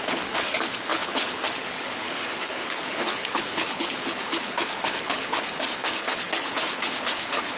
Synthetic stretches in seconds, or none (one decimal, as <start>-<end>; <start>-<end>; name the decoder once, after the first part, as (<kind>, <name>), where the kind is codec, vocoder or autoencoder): 0.0-7.6 (codec, HILCodec)